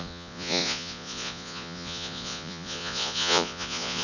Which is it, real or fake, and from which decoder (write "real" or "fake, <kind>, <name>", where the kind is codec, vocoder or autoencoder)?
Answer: fake, vocoder, Vocos